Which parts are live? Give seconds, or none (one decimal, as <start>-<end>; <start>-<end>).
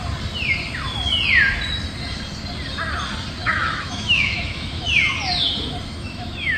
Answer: 0.0-3.4; 4.9-5.9